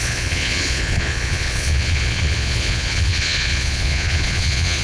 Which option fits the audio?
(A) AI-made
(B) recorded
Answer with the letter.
A